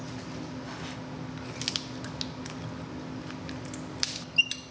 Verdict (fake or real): real